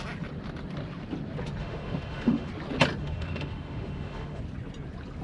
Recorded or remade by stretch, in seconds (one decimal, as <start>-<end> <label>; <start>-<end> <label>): 0.0-1.6 recorded; 1.6-2.5 remade; 2.5-3.0 recorded; 3.0-4.4 remade; 4.4-5.2 recorded